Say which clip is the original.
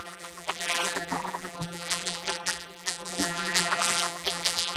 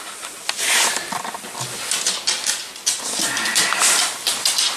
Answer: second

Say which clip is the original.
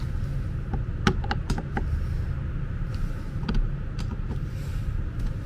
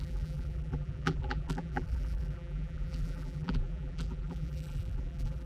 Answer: first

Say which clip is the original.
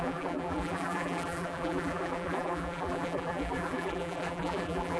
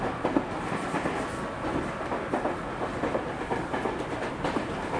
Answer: second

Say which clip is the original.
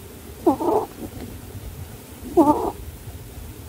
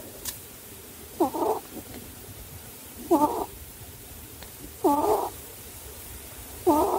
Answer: first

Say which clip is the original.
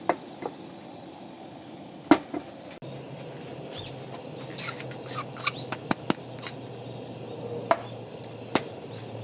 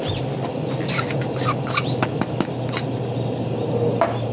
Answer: first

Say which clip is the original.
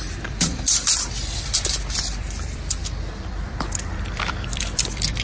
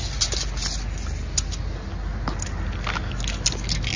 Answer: second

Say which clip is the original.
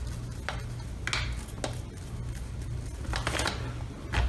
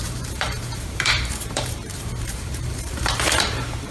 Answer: first